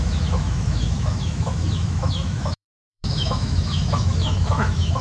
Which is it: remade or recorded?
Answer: remade